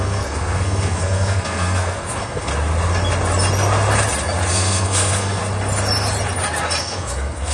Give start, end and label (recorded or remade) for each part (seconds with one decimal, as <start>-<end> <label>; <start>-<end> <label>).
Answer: 0.0-2.5 remade; 2.5-4.5 recorded; 4.5-5.4 remade; 5.4-6.8 recorded; 6.8-7.5 remade